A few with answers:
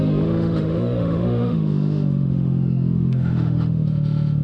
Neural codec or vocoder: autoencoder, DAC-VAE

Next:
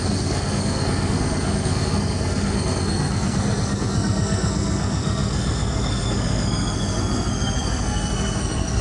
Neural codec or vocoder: codec, SNAC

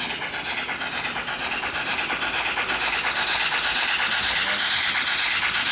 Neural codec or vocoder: none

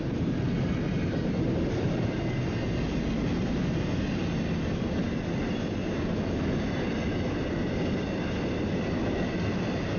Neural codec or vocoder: none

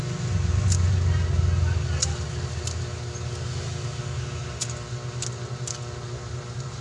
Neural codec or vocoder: none